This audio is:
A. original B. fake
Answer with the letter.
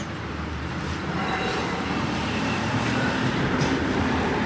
B